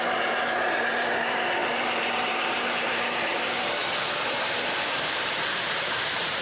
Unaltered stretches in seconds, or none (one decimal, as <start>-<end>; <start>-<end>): 3.8-4.9

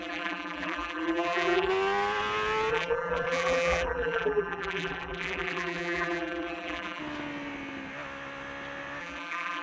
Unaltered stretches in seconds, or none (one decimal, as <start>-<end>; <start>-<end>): 1.7-2.7; 7.0-9.0

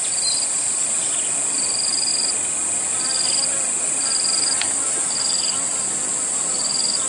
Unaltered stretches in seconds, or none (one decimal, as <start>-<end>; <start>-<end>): 0.0-7.1